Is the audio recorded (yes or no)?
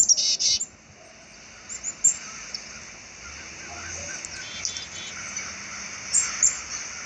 yes